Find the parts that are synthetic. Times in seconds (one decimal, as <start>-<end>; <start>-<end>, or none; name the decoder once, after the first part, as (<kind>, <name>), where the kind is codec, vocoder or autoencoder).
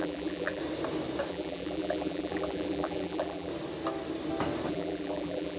0.0-0.6 (vocoder, BigVGAN v2); 1.3-3.5; 4.7-5.6